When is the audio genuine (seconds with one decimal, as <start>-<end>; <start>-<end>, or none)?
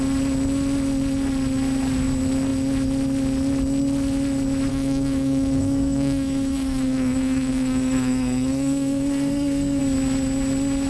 0.0-4.7; 9.8-10.9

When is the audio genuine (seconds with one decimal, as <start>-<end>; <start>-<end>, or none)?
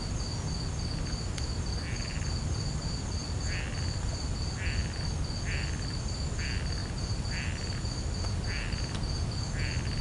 0.0-10.0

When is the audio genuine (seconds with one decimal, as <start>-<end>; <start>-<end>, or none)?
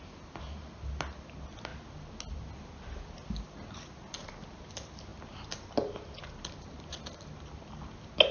0.0-8.3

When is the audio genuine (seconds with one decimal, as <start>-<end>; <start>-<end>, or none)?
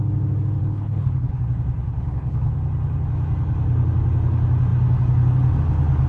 0.0-0.6; 1.4-1.9; 2.5-6.1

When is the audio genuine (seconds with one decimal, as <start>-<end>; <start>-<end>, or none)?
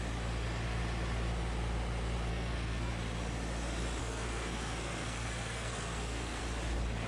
0.0-2.3; 2.9-4.0; 6.4-7.1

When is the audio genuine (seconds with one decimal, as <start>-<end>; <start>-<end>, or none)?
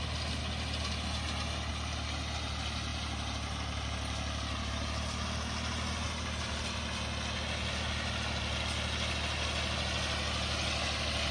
0.0-11.3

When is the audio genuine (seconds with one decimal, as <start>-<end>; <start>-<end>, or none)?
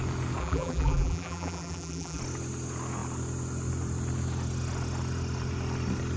0.0-0.4; 2.2-6.2